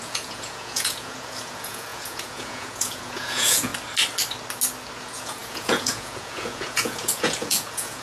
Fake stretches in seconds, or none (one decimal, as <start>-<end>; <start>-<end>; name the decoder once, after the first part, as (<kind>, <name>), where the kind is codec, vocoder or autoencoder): 0.0-3.7 (vocoder, Vocos); 5.0-8.0

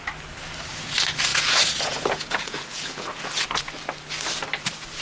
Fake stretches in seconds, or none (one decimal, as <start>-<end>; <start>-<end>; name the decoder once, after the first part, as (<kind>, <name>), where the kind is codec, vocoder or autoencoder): 1.3-3.2 (vocoder, Vocos)